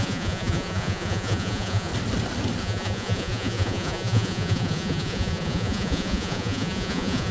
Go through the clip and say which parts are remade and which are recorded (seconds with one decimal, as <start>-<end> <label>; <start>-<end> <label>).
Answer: 0.0-1.9 remade; 1.9-2.6 recorded; 2.6-7.3 remade